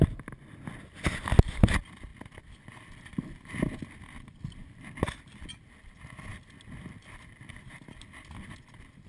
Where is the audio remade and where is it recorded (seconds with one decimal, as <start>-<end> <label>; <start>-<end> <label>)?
0.0-9.1 recorded